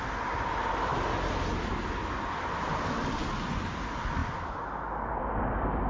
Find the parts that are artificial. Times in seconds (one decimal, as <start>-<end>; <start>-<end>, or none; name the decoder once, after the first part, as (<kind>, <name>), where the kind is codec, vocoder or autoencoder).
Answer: none